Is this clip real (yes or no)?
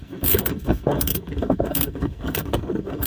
no